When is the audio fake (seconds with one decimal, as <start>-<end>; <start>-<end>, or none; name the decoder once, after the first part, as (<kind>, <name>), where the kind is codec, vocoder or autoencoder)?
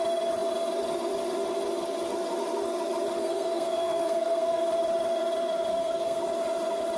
3.2-4.6 (codec, SNAC); 5.7-6.2